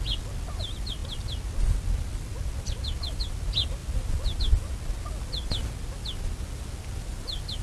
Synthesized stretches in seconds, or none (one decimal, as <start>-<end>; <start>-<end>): none